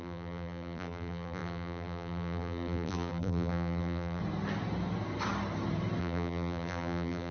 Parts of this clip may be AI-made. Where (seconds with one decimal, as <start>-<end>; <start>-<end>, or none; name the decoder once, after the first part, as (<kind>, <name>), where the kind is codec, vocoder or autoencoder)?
0.0-4.2 (vocoder, BigVGAN v2); 6.0-7.3

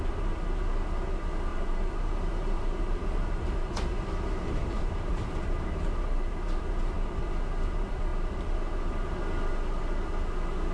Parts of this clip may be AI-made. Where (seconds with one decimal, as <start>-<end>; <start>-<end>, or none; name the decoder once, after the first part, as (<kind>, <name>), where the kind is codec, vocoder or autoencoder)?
1.5-3.1 (vocoder, BigVGAN v2); 4.6-6.8

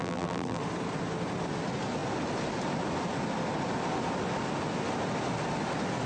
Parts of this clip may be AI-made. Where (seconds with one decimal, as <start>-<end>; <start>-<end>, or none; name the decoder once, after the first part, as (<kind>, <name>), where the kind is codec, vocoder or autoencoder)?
0.0-0.6 (vocoder, BigVGAN v2)

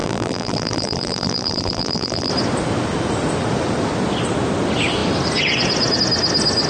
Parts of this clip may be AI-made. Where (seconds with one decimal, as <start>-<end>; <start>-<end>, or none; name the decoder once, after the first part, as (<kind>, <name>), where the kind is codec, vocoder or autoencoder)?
0.0-2.3 (vocoder, BigVGAN v2)

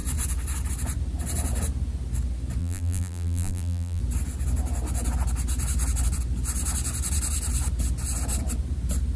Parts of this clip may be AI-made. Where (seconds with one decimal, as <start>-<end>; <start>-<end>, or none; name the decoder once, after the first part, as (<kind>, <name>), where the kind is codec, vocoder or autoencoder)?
2.6-4.0 (vocoder, BigVGAN v2)

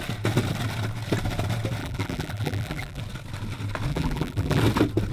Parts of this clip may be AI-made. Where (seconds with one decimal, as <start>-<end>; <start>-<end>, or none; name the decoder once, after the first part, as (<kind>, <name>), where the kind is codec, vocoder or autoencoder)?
1.8-3.0 (vocoder, BigVGAN v2); 3.9-4.6